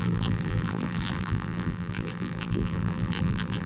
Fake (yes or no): yes